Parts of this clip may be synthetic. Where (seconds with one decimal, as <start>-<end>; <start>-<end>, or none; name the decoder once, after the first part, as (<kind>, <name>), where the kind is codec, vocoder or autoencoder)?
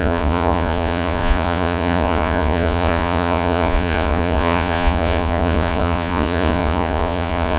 0.0-7.6 (vocoder, Vocos)